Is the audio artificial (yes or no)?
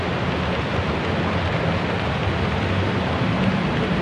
no